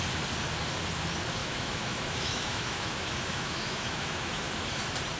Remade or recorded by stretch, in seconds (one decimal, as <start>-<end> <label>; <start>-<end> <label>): 0.0-1.4 recorded; 1.4-4.5 remade; 4.5-5.2 recorded